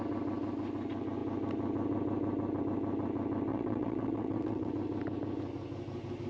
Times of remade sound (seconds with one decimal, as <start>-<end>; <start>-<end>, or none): 3.5-4.7